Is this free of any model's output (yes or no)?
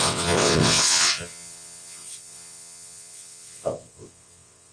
no